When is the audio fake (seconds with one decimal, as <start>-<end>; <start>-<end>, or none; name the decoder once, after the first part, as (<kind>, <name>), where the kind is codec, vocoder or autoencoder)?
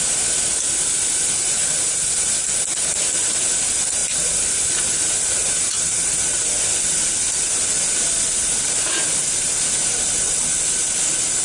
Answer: 5.7-6.5 (vocoder, BigVGAN v2)